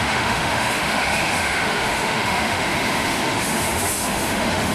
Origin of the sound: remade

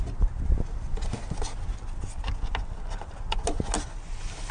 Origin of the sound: recorded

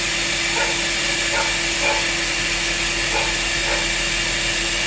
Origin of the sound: recorded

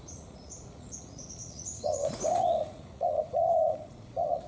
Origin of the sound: remade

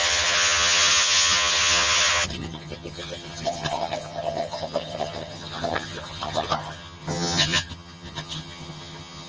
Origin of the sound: remade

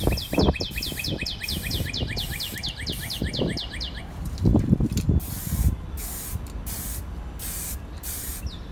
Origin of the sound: recorded